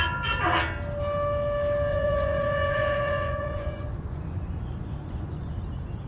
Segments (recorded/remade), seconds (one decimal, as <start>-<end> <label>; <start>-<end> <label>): 0.0-1.9 recorded; 1.9-5.6 remade; 5.6-6.1 recorded